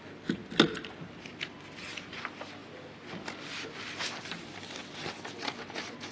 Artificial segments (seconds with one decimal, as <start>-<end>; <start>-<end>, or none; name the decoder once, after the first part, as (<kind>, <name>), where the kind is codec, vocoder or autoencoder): none